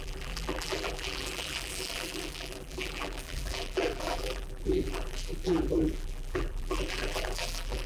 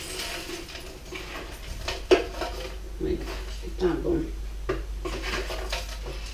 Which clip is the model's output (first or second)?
first